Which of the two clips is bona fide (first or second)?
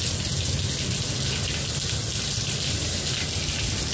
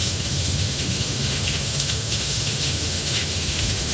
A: first